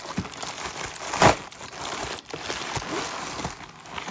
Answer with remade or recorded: recorded